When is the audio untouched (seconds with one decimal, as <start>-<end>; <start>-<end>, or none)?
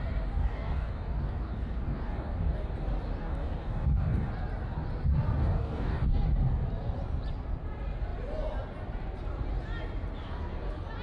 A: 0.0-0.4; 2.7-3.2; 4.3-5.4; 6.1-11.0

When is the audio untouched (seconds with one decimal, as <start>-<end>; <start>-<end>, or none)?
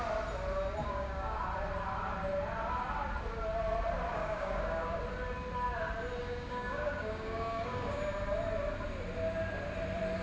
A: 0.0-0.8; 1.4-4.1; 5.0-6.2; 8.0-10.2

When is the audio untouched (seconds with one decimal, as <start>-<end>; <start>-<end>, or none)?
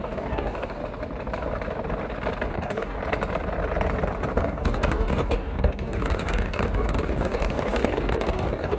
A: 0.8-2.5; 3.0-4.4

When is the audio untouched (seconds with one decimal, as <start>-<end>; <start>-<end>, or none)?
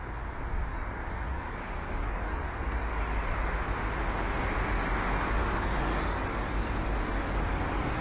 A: 0.0-0.7; 3.2-5.4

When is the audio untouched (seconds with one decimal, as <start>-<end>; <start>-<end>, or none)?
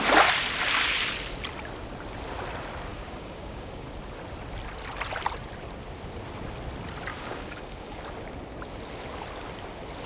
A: 0.0-2.9; 3.9-7.1; 8.0-10.1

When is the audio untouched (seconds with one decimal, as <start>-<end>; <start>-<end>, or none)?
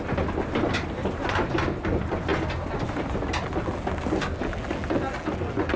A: 0.0-5.8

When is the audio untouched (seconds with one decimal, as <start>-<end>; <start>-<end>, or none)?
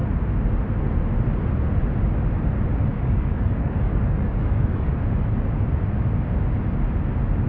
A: 0.0-2.9; 4.9-7.5